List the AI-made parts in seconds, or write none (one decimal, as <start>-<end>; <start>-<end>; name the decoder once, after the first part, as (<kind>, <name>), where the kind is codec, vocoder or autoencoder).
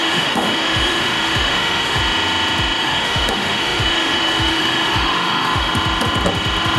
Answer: 0.0-2.0 (autoencoder, DAC-VAE); 2.8-5.7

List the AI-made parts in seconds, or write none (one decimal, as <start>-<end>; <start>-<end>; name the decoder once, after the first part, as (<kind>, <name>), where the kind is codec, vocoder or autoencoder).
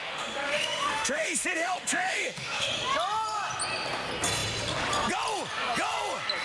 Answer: 0.0-2.7 (autoencoder, DAC-VAE)